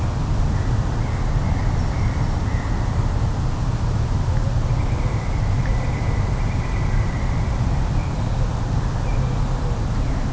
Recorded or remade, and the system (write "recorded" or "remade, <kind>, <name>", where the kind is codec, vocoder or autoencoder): recorded